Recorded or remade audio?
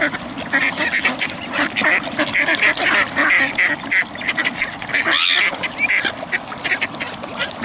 recorded